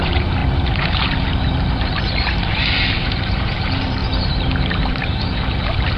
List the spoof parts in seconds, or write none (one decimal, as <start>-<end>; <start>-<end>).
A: 0.0-6.0